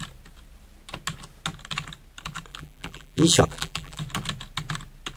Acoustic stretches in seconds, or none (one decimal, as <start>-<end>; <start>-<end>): 0.0-2.5; 4.0-5.2